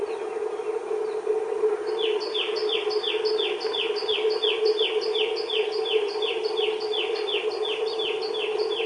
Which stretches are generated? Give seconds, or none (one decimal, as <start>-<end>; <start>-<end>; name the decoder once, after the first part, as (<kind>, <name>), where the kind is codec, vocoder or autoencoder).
none